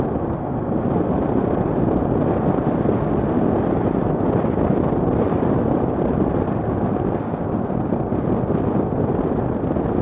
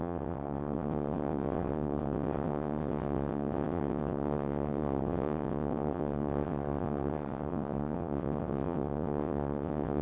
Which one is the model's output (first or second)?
second